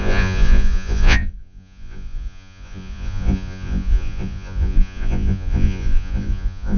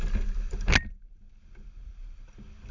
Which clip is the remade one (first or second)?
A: first